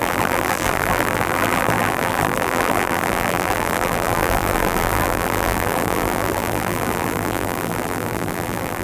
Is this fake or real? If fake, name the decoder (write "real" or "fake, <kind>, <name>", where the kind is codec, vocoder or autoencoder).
fake, vocoder, BigVGAN v2